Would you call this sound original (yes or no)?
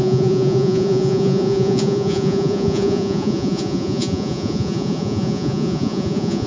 no